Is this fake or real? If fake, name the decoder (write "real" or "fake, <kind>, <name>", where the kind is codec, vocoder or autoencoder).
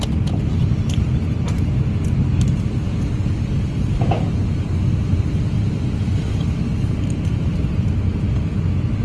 real